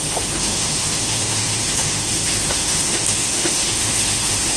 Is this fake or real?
fake